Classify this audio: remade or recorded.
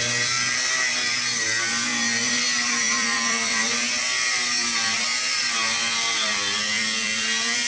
remade